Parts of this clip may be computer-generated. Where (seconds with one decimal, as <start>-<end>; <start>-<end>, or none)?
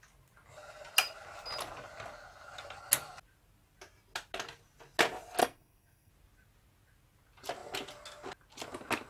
5.4-6.1